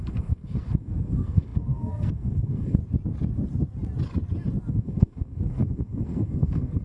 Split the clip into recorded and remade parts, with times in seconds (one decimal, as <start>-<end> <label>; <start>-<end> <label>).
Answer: 0.0-2.8 remade; 2.8-4.7 recorded; 4.7-6.8 remade